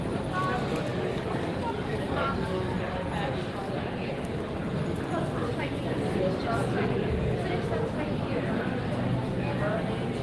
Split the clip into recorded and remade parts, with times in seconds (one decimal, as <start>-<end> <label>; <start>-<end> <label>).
0.0-0.9 recorded; 0.9-2.7 remade; 2.7-10.2 recorded